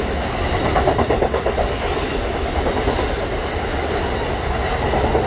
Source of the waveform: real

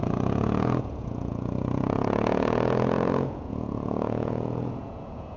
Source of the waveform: fake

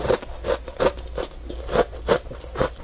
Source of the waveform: real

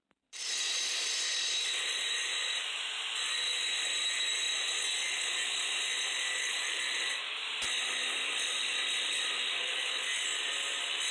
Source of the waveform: real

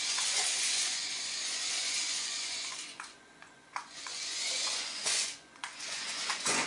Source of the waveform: fake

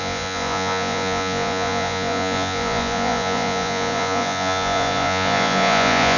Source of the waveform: fake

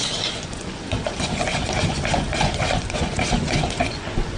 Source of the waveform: fake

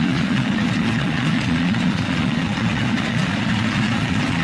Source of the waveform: fake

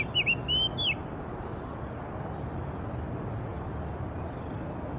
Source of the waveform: real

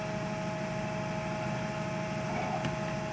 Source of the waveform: real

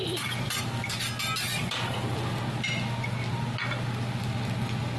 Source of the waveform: real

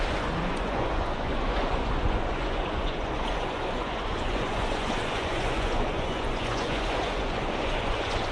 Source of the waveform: fake